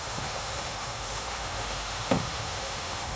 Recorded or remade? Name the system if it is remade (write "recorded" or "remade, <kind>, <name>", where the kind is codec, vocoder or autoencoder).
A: remade, autoencoder, DAC-VAE